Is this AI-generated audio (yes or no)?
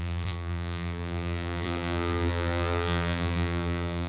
yes